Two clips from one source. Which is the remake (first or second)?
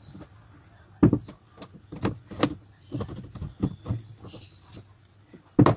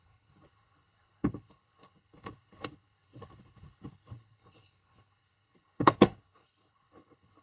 second